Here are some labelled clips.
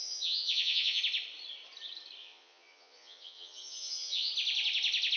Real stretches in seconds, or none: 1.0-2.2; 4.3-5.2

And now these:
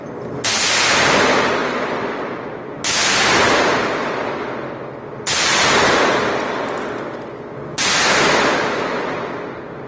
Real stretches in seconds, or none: 0.0-1.6; 2.6-9.9

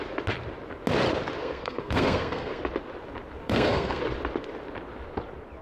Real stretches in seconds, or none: 0.0-1.4; 2.6-3.4; 4.0-5.6

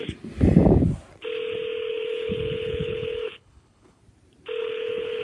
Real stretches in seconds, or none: 0.0-1.9; 4.0-4.6

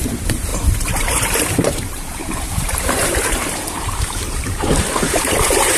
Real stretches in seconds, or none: none

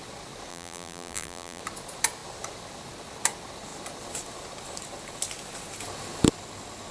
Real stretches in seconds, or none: 0.0-0.5; 1.6-6.9

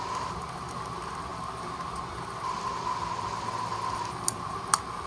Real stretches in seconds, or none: 0.0-5.1

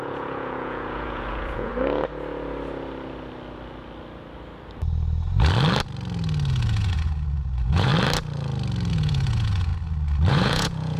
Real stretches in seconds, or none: 1.7-6.5; 7.9-8.9; 9.7-10.3